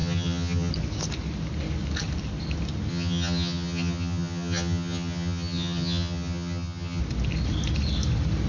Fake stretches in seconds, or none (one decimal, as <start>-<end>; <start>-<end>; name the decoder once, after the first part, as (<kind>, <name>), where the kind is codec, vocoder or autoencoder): 0.0-0.7 (vocoder, HiFi-GAN); 2.9-7.0